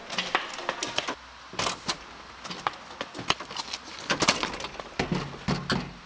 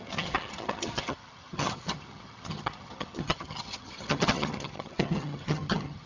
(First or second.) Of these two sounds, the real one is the first